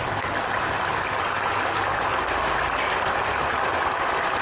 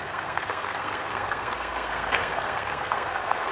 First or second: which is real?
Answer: first